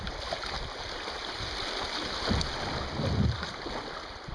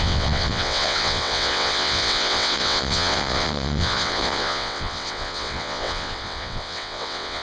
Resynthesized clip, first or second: second